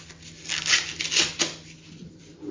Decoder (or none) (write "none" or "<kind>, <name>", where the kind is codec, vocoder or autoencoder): none